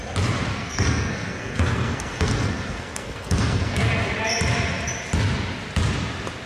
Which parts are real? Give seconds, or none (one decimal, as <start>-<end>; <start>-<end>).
0.0-0.5; 3.8-6.5